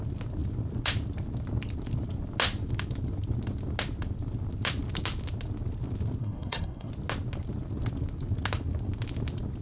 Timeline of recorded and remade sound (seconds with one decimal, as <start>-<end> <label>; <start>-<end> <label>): 0.0-6.2 recorded; 6.2-6.9 remade; 6.9-9.6 recorded